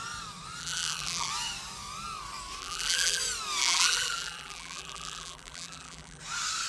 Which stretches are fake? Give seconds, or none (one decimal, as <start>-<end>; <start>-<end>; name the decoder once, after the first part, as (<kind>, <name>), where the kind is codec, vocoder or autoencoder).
0.6-1.3 (vocoder, BigVGAN v2); 2.6-3.2; 3.6-6.2